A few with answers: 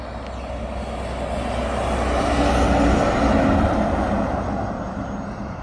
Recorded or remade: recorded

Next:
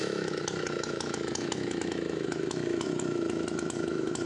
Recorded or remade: remade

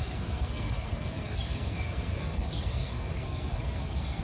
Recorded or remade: remade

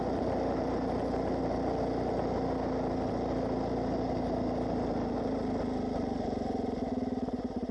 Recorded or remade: recorded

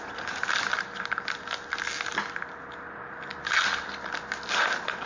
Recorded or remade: recorded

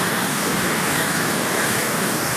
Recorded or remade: remade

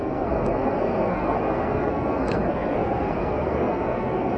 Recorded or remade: remade